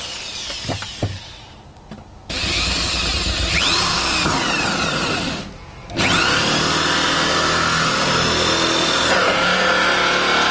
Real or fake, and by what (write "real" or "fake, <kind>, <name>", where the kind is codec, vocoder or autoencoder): real